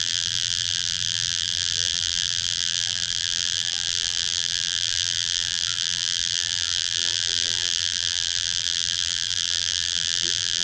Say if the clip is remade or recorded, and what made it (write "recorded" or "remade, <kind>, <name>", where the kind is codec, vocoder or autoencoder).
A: remade, vocoder, BigVGAN v2